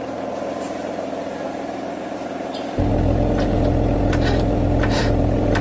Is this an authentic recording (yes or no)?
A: no